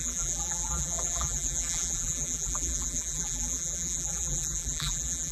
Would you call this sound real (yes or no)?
no